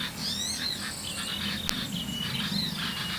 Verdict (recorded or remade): recorded